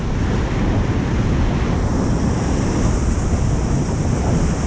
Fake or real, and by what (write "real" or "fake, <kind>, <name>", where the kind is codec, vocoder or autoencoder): real